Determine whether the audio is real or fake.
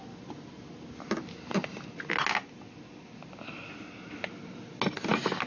real